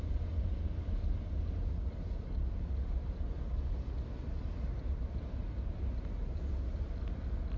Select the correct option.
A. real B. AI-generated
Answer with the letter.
A